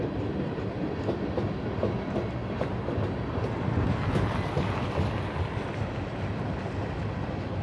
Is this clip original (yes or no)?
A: yes